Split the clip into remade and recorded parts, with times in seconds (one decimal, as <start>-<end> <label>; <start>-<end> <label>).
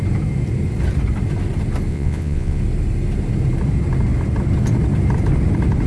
0.0-1.9 recorded; 1.9-2.6 remade; 2.6-5.9 recorded